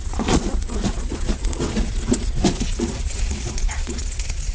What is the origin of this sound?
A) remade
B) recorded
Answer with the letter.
A